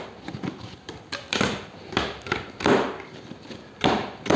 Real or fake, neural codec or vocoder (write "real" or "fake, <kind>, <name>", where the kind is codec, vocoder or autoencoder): real